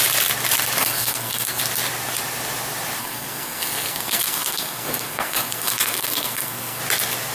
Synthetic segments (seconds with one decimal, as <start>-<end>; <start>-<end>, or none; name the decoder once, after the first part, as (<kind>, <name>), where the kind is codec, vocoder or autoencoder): 0.8-1.6 (codec, SNAC); 3.0-6.8